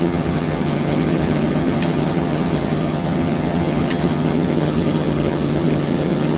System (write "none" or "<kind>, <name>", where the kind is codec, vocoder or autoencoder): vocoder, HiFi-GAN